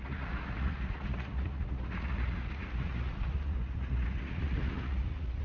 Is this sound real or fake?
fake